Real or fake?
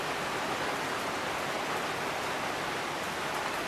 real